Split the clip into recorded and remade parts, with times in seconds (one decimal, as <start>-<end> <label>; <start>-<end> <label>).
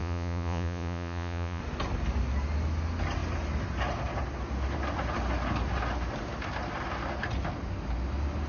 0.0-1.6 remade; 1.6-8.5 recorded